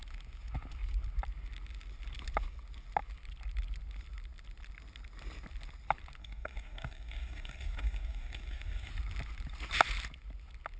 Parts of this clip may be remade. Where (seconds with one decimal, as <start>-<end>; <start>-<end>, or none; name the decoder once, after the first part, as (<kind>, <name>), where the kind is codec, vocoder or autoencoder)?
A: 6.2-8.9 (codec, DAC)